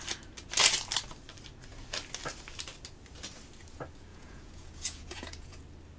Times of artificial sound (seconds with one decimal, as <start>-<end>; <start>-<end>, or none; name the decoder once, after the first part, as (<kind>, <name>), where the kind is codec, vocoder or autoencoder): 4.1-5.6 (vocoder, Vocos)